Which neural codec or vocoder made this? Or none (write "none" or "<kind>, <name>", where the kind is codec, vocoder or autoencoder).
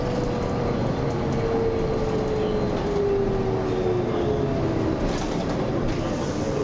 none